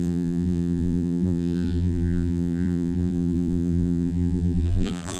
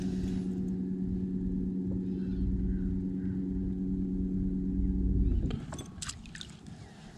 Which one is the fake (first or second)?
first